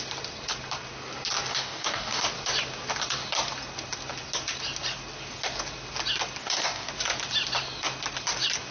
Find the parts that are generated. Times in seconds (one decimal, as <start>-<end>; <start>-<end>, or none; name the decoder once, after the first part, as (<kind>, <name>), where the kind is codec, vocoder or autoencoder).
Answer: 1.5-2.2 (codec, DAC); 6.4-6.9